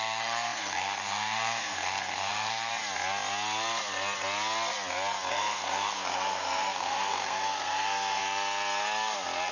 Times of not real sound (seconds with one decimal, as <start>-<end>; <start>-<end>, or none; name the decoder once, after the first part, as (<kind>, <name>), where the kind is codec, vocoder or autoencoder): 0.0-2.7 (codec, SNAC); 5.3-8.2

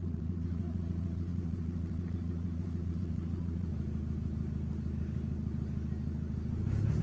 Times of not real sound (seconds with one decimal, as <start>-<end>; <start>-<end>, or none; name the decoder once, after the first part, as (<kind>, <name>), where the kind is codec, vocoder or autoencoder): 0.0-3.7 (vocoder, Vocos)

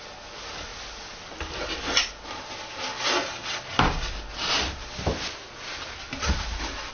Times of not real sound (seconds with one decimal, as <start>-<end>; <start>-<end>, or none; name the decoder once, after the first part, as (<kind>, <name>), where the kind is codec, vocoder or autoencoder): none

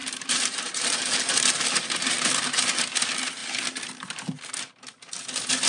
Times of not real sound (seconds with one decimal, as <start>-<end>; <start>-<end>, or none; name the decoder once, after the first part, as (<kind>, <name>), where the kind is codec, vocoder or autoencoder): 0.0-2.3 (vocoder, BigVGAN v2)

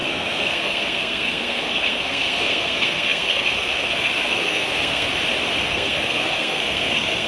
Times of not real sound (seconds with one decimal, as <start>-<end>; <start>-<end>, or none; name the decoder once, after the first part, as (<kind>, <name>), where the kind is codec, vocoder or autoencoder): 0.0-5.1 (codec, SNAC); 5.7-7.3